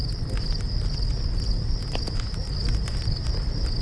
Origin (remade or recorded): recorded